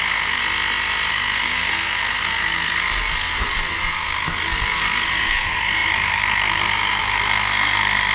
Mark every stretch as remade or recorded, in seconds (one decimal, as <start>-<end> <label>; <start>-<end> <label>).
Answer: 0.0-0.4 remade; 0.4-1.1 recorded; 1.1-8.1 remade